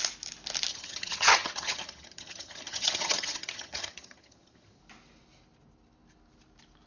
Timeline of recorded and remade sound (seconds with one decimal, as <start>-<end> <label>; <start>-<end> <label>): 0.0-0.7 recorded; 0.7-4.8 remade; 4.8-6.9 recorded